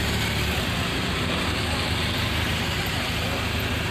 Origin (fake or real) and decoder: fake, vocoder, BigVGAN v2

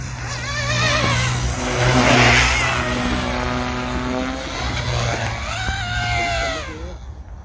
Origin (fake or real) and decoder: real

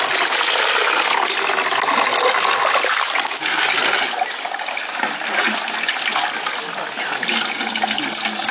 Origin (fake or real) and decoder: real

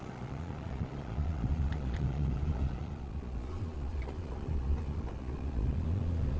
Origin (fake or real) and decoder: fake, vocoder, Vocos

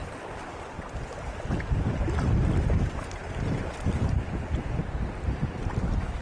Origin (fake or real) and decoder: real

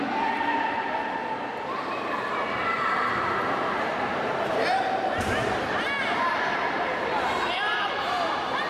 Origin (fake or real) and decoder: fake, vocoder, BigVGAN v2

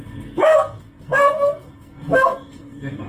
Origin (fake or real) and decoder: fake, codec, SNAC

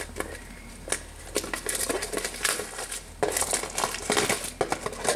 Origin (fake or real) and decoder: real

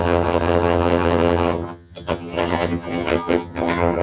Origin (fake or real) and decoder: fake, vocoder, HiFi-GAN